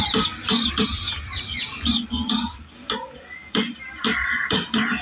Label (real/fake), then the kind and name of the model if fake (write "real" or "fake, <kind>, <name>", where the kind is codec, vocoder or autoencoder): real